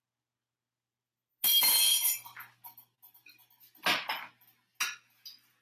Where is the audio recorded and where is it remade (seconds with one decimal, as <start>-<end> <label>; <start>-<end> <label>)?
0.0-5.6 recorded